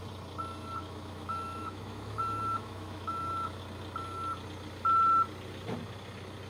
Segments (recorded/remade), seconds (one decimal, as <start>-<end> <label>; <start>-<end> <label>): 0.0-0.8 recorded; 0.8-3.6 remade; 3.6-6.5 recorded